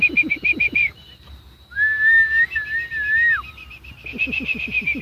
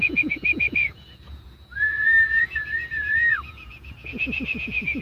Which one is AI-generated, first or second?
second